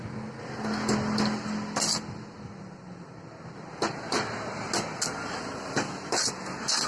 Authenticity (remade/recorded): recorded